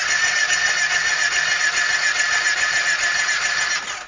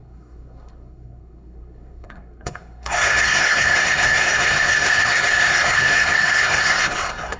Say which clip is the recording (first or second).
first